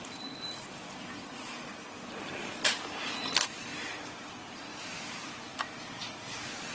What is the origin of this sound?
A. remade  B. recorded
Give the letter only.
A